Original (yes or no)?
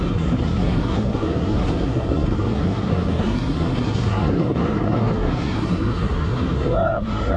no